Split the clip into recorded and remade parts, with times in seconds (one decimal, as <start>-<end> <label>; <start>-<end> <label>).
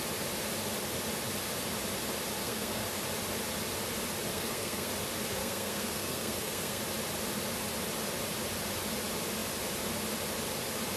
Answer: 0.0-2.4 recorded; 2.4-3.0 remade; 3.0-4.3 recorded; 4.3-4.9 remade; 4.9-5.4 recorded; 5.4-6.8 remade; 6.8-11.0 recorded